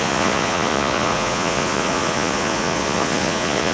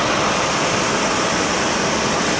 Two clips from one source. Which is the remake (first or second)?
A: first